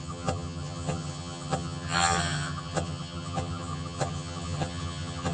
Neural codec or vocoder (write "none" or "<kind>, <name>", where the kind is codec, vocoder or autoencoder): vocoder, HiFi-GAN